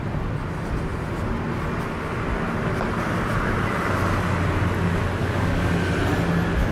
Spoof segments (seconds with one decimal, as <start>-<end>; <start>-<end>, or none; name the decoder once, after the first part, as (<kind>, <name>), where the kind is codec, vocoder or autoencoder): 5.2-5.7 (codec, DAC)